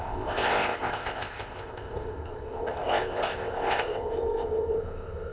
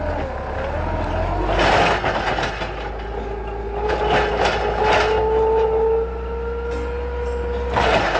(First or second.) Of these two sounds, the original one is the second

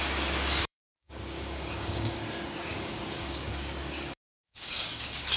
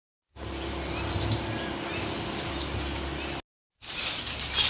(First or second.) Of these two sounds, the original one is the second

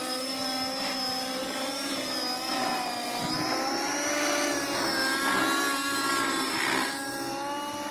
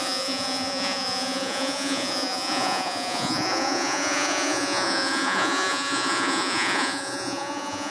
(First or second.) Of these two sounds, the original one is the first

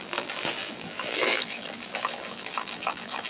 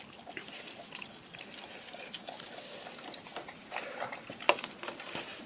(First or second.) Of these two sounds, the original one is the second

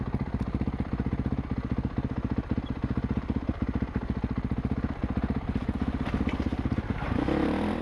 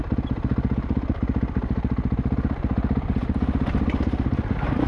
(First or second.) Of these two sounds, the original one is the first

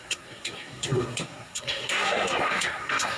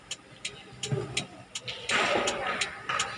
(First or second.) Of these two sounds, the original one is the second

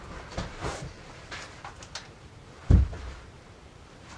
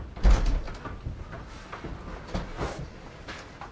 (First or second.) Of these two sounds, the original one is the second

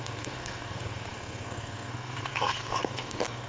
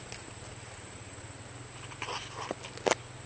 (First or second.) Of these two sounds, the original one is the second